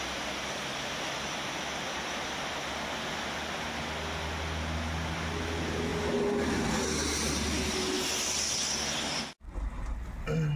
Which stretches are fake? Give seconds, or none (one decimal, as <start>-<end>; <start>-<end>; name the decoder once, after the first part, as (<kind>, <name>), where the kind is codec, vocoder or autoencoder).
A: none